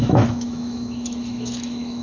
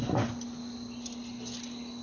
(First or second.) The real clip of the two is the second